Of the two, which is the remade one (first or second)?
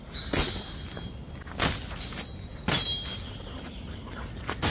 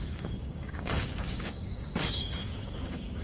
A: second